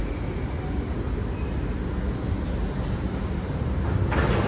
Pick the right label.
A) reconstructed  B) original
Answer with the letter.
B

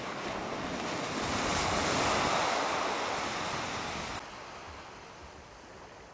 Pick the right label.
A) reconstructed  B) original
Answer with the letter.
B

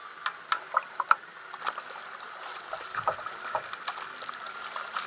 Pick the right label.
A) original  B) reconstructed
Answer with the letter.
A